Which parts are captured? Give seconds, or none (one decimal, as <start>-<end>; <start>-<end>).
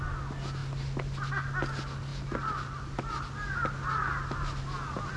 0.0-5.2